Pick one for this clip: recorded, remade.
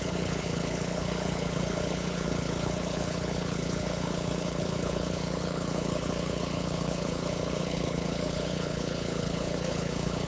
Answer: remade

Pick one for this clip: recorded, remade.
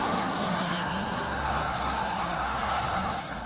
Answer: remade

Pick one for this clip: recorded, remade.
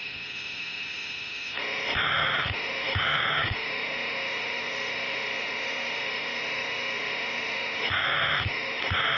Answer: remade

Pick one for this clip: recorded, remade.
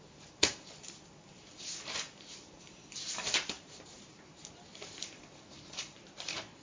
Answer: remade